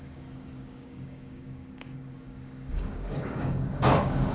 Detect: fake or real fake